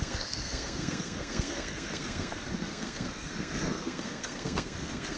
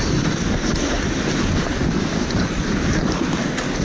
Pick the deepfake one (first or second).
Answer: first